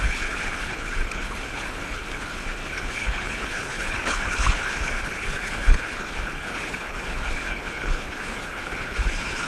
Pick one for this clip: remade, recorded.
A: remade